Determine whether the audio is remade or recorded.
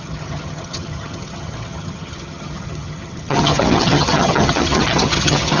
remade